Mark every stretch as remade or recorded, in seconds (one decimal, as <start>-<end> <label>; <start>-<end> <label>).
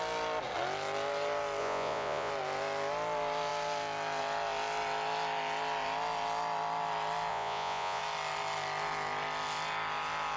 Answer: 0.0-1.6 recorded; 1.6-2.3 remade; 2.3-7.3 recorded; 7.3-8.0 remade; 8.0-10.4 recorded